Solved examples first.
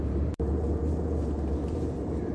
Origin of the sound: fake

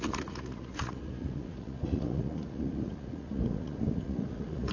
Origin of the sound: fake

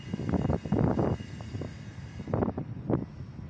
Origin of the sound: real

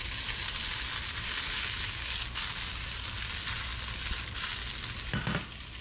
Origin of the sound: real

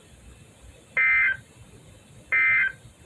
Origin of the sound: real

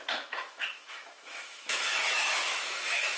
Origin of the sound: fake